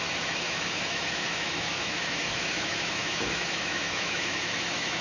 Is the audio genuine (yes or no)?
no